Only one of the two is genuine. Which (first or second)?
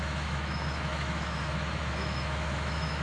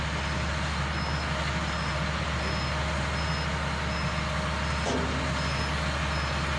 second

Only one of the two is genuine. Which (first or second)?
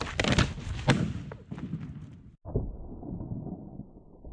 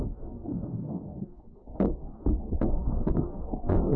first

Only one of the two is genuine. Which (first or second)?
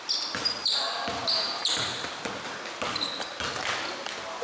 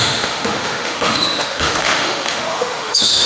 first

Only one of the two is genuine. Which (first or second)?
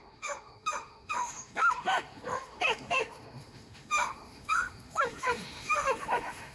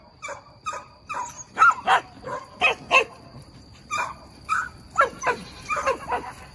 second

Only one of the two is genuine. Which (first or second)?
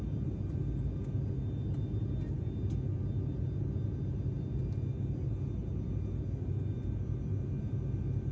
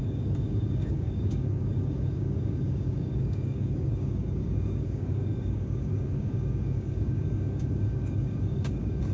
first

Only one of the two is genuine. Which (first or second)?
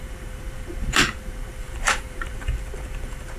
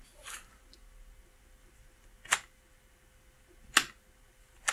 second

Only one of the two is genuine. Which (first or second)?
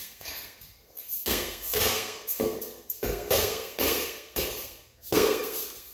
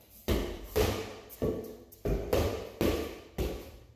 second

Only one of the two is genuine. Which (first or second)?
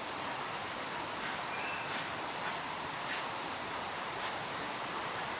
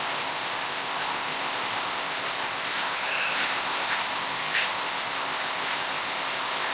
first